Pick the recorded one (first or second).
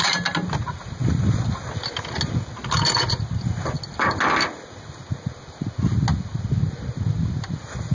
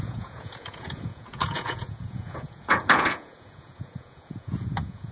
first